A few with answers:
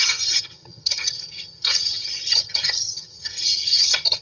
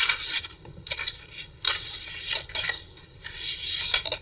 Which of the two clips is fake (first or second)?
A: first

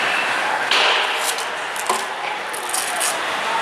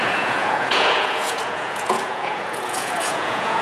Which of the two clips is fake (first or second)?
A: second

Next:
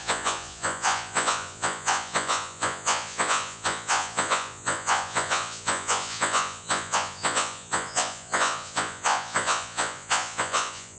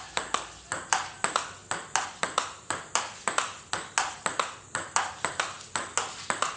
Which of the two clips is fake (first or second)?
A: first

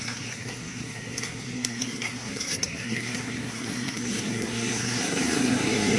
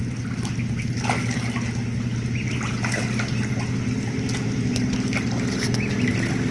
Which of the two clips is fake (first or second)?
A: first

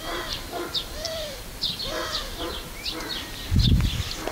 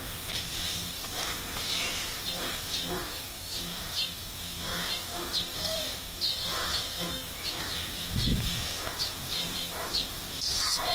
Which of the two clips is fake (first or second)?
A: second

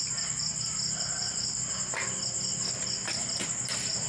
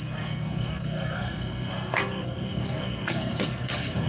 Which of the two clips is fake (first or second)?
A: second